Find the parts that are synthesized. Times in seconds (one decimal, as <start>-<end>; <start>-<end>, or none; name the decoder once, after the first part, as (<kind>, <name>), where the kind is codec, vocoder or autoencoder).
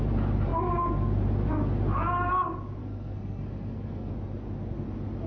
2.8-4.1 (codec, SNAC)